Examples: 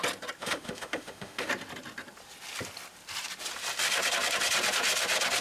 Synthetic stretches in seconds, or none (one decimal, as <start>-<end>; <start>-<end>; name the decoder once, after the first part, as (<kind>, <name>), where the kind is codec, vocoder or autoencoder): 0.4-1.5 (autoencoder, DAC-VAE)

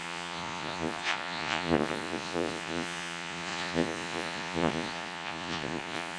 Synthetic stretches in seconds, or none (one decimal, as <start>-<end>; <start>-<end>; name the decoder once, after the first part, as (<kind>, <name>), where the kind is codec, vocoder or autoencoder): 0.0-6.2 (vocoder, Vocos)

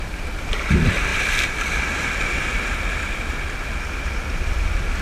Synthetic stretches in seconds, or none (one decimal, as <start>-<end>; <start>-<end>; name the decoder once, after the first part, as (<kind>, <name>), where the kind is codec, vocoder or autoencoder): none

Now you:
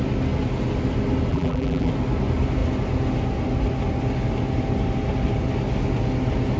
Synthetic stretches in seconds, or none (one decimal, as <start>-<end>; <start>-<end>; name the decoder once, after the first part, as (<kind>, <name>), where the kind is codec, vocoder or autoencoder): 1.3-1.9 (vocoder, BigVGAN v2)

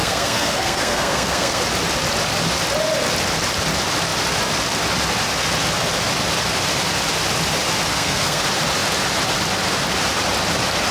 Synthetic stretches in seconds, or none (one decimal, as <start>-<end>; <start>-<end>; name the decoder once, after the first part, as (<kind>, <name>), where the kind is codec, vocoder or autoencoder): 0.0-1.6 (codec, SNAC); 7.9-8.4

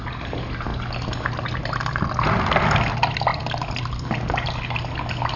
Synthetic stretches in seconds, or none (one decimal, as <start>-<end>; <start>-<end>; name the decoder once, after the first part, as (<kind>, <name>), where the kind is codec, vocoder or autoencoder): none